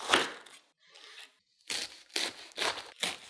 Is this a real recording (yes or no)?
yes